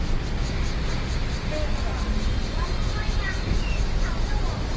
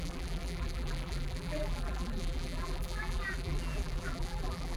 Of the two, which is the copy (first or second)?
second